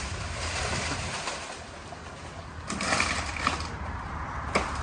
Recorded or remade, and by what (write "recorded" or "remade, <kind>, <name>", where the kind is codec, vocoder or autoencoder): recorded